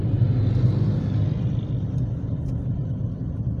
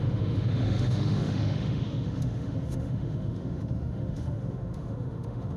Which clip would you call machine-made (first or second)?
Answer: second